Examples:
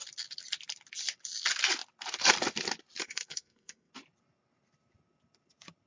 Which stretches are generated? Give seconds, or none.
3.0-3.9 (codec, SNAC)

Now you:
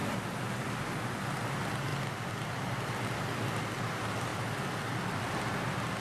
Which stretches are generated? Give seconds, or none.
none

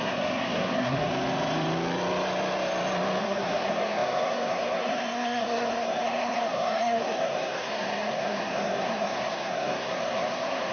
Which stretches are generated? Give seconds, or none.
0.0-1.1 (codec, SNAC); 3.2-10.7

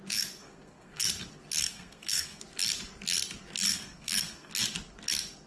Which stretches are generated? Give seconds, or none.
0.4-1.1 (codec, SNAC); 1.7-2.4; 3.7-4.5